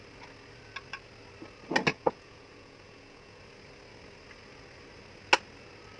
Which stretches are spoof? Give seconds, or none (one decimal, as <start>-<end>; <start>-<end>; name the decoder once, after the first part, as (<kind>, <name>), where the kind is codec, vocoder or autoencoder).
1.9-3.4 (vocoder, Vocos)